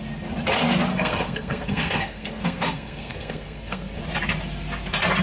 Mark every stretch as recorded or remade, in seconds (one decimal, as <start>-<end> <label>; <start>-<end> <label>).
0.0-0.9 recorded; 0.9-4.0 remade; 4.0-5.2 recorded